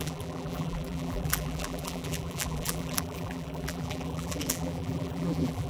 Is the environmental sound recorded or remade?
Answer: remade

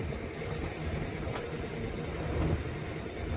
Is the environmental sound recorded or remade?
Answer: recorded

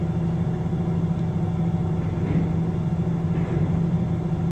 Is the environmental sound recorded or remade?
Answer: recorded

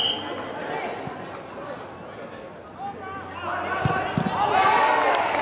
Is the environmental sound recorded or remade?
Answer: recorded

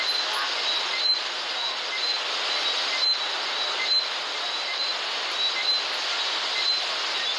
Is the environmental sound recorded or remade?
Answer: recorded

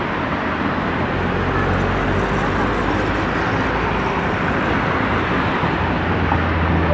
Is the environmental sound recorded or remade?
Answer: recorded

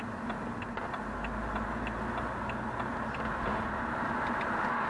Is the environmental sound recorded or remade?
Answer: recorded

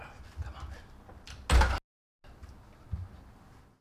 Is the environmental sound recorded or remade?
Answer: recorded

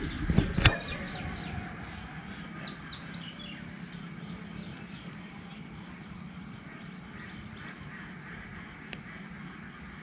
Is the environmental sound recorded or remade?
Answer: recorded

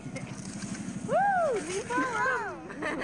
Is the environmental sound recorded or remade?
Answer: recorded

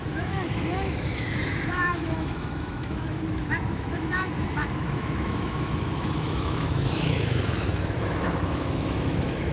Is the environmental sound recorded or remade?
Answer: remade